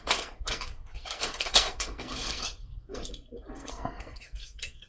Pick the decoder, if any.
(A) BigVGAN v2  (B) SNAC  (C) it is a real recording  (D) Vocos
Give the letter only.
B